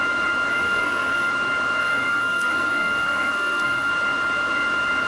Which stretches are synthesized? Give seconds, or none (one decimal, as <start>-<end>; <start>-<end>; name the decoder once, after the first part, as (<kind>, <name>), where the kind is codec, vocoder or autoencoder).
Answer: 0.5-1.3 (codec, SNAC); 1.8-3.9